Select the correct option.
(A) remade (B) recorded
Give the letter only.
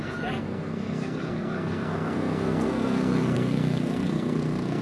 A